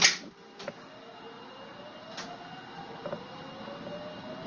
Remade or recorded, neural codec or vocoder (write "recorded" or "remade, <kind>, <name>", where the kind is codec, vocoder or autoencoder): recorded